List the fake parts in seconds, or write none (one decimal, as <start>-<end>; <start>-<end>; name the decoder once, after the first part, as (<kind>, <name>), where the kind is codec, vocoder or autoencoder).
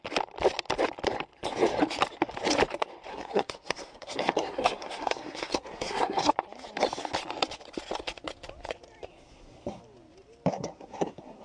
3.1-6.3 (codec, SNAC); 9.1-9.8; 10.5-11.4